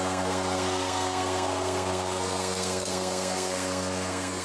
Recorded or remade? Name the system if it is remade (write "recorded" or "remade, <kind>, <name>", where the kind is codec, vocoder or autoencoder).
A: remade, codec, SNAC